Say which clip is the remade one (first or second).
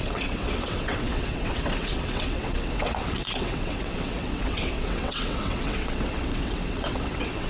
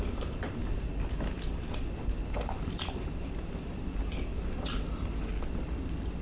first